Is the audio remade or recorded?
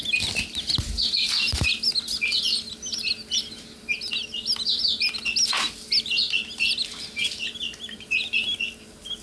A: recorded